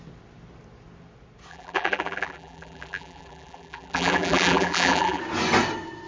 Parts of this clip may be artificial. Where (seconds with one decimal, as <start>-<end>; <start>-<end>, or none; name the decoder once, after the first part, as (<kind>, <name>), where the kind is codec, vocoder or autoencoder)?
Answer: 1.5-5.2 (vocoder, BigVGAN v2)